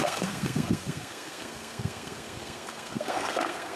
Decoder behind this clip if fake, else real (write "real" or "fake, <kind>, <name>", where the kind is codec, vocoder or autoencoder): fake, codec, SNAC